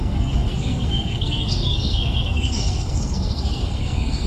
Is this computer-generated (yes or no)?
yes